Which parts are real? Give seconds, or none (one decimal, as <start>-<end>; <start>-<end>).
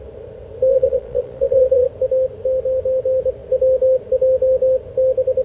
0.0-0.7; 1.9-5.4